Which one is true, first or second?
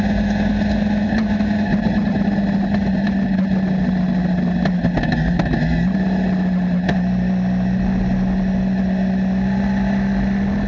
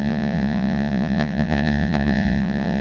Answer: first